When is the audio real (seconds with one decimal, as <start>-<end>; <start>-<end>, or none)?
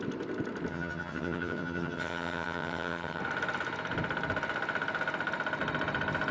0.0-0.7; 3.2-6.3